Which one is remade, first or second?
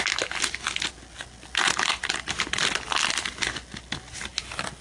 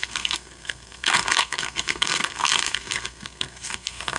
second